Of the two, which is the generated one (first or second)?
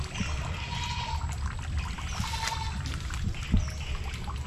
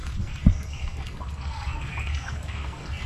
second